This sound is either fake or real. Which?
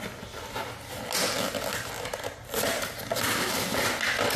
real